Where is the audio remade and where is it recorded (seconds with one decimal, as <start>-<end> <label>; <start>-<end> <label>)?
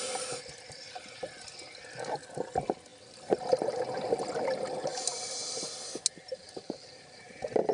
0.0-7.7 recorded